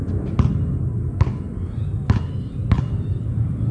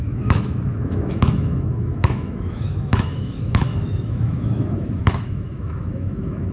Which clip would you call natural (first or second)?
first